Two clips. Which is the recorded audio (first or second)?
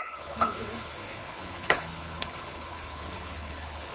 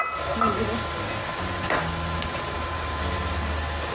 second